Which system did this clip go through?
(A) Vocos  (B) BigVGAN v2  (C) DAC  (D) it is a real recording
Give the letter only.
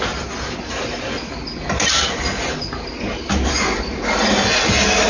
D